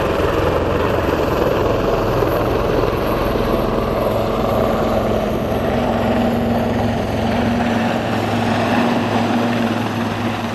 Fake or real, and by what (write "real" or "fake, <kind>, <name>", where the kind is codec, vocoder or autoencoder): fake, vocoder, BigVGAN v2